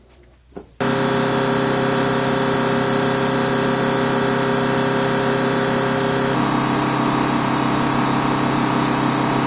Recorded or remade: recorded